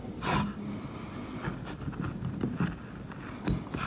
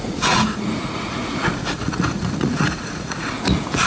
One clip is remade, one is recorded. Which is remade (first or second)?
second